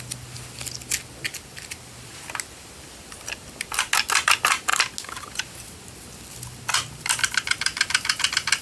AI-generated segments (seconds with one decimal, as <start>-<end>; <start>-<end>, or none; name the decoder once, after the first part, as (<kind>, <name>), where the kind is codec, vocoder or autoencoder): none